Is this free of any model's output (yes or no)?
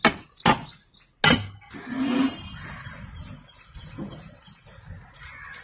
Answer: yes